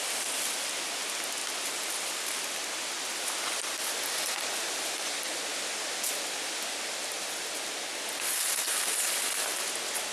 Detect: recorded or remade recorded